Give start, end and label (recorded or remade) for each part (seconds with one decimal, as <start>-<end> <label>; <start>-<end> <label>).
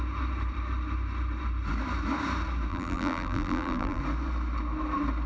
0.0-2.7 recorded; 2.7-4.0 remade; 4.0-5.3 recorded